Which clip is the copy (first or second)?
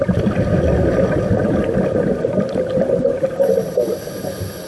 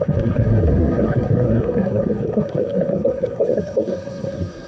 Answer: second